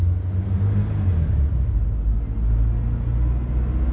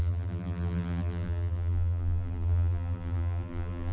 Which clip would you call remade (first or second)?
second